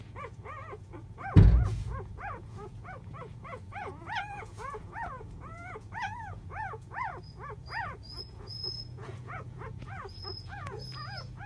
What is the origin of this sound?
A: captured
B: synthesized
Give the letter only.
B